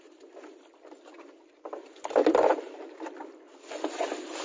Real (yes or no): yes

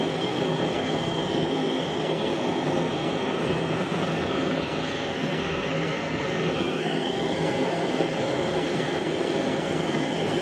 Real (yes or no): no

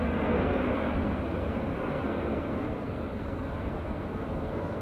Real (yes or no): no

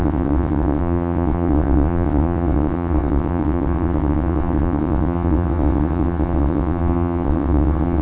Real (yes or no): no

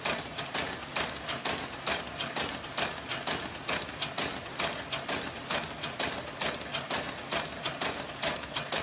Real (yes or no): yes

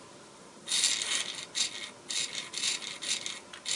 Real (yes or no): yes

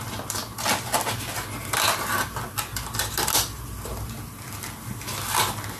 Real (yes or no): yes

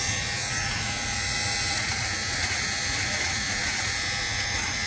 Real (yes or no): no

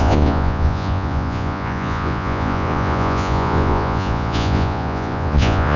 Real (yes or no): no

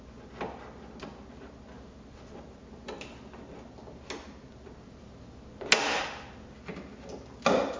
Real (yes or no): yes